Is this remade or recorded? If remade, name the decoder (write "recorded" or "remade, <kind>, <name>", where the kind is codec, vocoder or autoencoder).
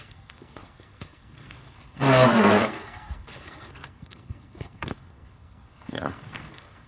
remade, codec, SNAC